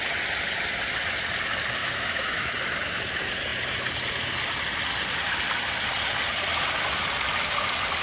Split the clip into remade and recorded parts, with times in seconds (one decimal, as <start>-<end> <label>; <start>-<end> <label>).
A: 0.0-1.8 recorded; 1.8-2.5 remade; 2.5-8.0 recorded